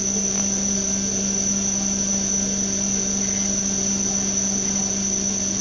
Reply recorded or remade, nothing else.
recorded